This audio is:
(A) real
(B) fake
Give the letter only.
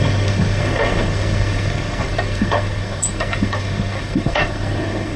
B